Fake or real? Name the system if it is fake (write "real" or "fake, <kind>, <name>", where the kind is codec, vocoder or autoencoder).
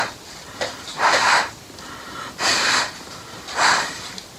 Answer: fake, vocoder, BigVGAN v2